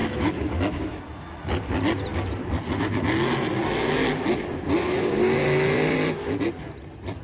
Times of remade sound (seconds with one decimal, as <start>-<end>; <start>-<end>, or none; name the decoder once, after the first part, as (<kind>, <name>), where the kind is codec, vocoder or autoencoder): 0.0-1.0 (autoencoder, DAC-VAE)